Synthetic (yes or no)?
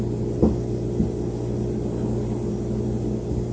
no